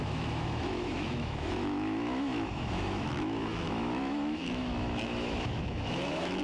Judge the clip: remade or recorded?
remade